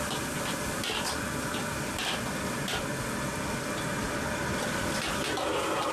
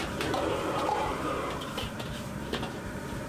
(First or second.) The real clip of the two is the first